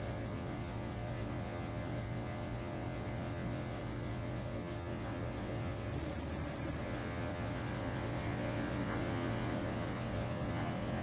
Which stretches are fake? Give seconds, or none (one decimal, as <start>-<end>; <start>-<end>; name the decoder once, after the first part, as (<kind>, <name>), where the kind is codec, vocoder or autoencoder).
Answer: 0.0-5.9 (vocoder, WaveNeXt); 6.8-11.0